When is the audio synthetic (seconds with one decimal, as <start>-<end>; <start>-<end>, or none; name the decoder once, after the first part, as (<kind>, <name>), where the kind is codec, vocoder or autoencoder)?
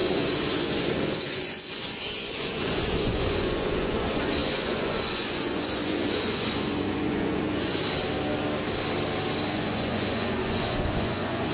0.0-7.8 (vocoder, Vocos); 9.5-11.5